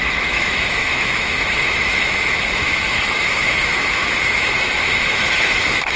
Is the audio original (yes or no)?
no